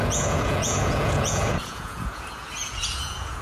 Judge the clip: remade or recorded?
remade